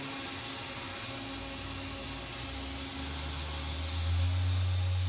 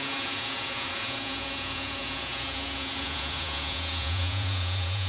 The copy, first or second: second